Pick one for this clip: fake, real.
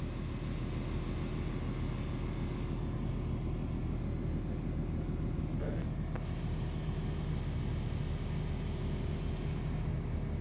real